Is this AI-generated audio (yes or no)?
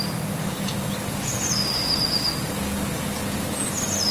no